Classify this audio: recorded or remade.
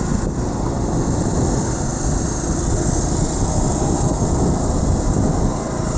recorded